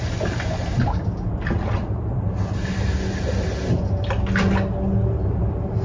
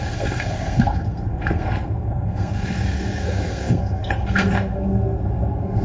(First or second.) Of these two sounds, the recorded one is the first